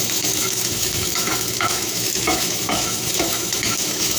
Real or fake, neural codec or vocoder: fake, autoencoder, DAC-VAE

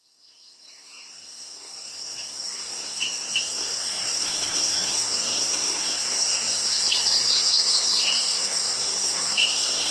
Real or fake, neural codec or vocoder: fake, codec, SNAC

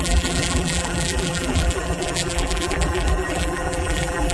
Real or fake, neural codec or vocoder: fake, vocoder, BigVGAN v2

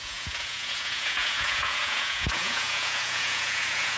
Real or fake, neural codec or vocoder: fake, vocoder, Vocos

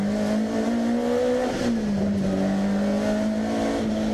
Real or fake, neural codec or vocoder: real